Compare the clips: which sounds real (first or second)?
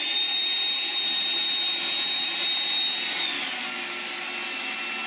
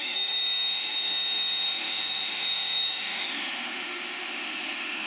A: first